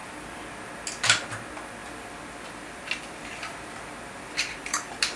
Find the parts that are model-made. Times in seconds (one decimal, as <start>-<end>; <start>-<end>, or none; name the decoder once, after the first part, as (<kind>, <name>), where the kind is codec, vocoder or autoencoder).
1.8-5.2 (vocoder, BigVGAN v2)